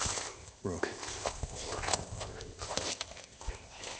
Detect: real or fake fake